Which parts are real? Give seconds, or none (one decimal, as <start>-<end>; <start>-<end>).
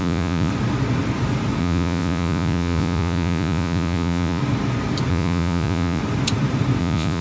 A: 0.5-1.6; 4.4-5.1; 6.0-6.8